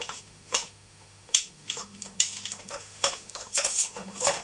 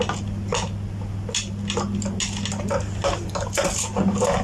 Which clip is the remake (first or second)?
first